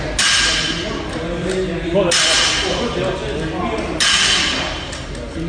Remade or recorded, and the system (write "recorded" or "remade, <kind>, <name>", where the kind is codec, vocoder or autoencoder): recorded